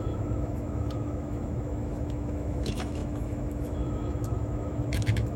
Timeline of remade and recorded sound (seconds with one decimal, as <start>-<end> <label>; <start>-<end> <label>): 0.0-5.4 remade